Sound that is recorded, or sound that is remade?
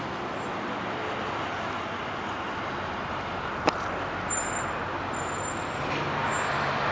recorded